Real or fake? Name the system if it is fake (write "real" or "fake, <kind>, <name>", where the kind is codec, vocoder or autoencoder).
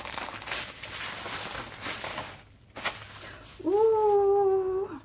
real